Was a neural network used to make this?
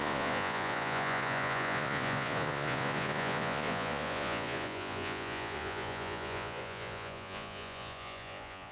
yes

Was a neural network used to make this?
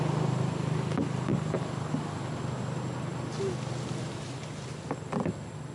no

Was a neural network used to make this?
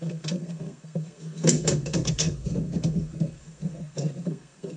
yes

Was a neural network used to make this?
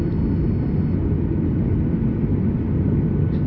no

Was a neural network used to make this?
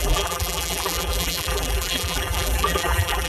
yes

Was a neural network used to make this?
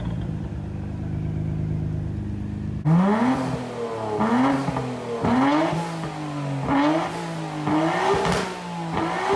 no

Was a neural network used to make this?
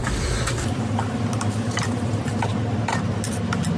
no